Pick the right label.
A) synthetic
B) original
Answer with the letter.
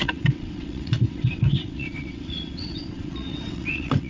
A